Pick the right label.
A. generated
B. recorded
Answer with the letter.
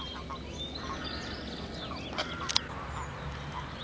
B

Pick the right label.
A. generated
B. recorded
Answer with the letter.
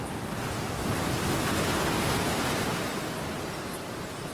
B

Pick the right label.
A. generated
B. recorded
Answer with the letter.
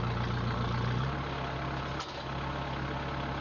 B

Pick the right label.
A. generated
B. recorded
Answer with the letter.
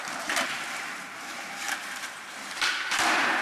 A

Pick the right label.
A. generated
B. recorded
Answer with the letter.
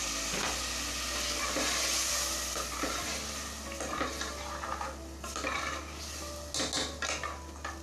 B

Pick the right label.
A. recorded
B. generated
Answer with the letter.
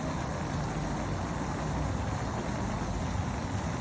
A